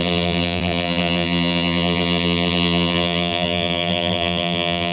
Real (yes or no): no